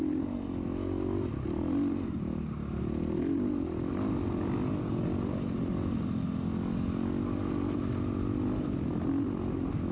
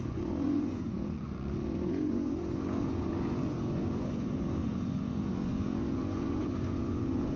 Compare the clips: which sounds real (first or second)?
first